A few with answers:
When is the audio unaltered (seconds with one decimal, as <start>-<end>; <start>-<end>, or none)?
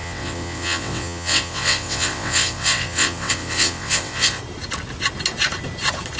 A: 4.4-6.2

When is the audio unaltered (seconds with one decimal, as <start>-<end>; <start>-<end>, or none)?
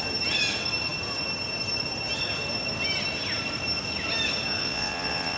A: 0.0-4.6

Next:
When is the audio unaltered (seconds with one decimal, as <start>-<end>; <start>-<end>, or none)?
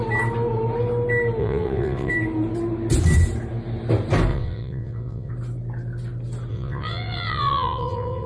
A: 0.0-1.4; 2.1-4.3; 5.3-6.5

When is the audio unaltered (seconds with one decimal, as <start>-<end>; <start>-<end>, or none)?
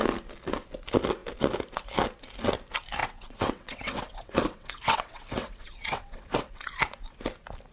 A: 0.0-3.0; 6.5-7.7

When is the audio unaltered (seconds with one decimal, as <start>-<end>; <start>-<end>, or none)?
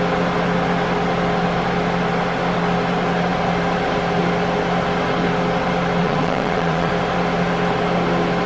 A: 0.0-6.0; 6.9-8.5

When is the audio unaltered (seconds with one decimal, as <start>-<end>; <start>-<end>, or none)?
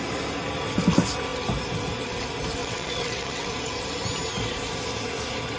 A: 0.0-2.6; 3.5-5.6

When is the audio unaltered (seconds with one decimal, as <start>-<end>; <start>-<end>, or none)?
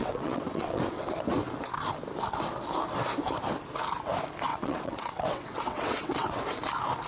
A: 0.8-4.5; 6.4-7.1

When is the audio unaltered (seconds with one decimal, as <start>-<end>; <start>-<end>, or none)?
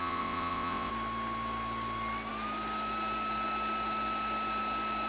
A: 0.9-5.1